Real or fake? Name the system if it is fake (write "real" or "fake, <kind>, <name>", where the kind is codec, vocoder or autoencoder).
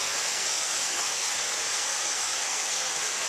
fake, codec, SNAC